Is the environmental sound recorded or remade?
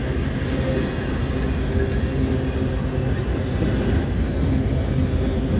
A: recorded